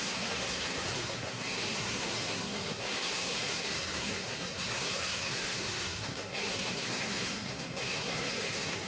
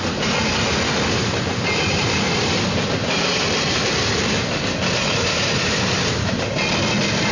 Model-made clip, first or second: first